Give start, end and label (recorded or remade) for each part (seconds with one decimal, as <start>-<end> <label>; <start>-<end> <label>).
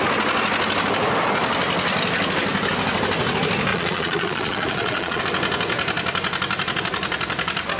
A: 0.0-3.7 recorded; 3.7-5.2 remade; 5.2-7.8 recorded